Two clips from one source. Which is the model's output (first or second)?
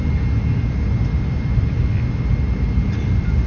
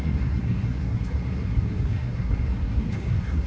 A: second